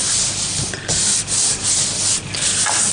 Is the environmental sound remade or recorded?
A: recorded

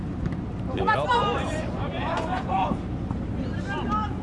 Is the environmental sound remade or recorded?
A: remade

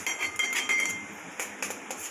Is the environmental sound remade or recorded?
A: recorded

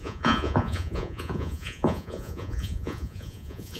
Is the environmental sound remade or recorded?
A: remade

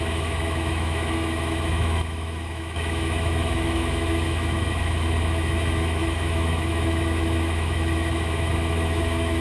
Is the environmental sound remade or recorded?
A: remade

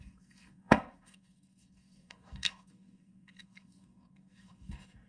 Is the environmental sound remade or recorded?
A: remade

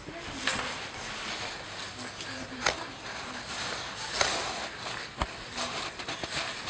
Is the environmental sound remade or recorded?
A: recorded